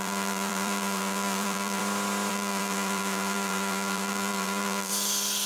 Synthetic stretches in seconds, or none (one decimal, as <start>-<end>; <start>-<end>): 0.0-1.8; 2.3-4.9